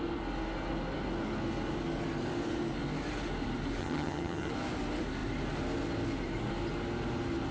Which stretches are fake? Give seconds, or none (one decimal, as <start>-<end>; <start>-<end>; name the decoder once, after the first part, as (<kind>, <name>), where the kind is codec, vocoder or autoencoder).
3.8-4.5 (vocoder, HiFi-GAN)